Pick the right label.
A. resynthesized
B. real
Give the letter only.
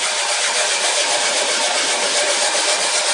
B